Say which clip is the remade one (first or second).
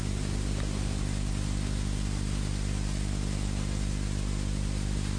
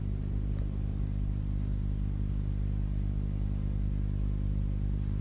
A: second